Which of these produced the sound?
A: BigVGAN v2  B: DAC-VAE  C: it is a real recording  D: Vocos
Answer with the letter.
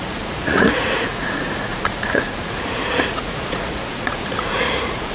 D